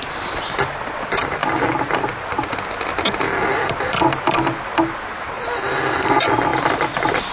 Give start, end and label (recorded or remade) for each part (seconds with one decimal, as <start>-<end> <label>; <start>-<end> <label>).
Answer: 0.0-7.3 recorded